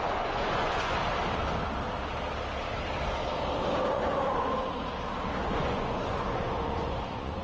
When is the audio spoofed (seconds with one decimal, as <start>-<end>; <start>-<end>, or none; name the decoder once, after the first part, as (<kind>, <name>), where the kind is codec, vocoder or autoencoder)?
0.0-1.0 (vocoder, Vocos); 3.9-4.4; 5.5-7.4